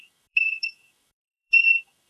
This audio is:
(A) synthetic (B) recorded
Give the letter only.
A